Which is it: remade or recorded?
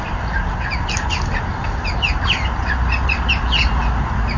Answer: recorded